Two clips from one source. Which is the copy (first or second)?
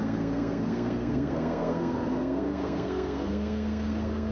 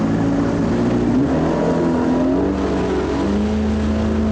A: first